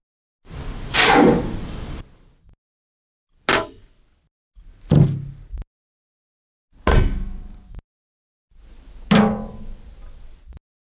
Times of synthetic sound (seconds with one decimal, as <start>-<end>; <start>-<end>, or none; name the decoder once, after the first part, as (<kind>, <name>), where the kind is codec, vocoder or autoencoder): none